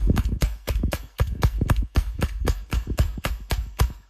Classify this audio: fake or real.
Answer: fake